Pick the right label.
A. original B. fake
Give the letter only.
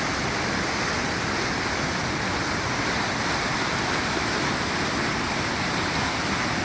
A